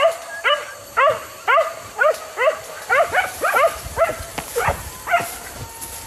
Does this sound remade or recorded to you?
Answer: recorded